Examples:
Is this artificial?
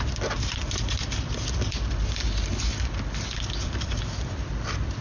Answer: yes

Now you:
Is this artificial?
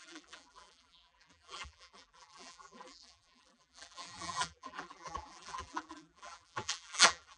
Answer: yes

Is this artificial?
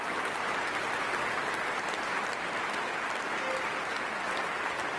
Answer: no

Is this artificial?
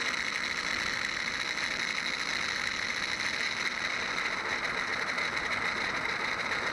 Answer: no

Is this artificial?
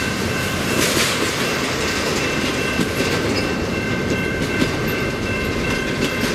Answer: yes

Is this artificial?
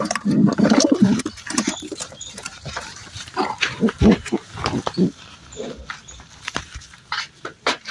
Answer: yes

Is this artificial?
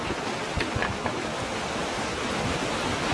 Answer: no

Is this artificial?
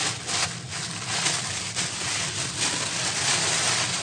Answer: no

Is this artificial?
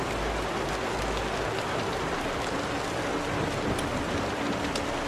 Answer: no